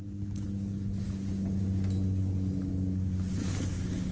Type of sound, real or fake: real